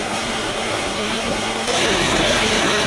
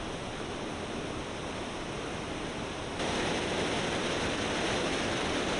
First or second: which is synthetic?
first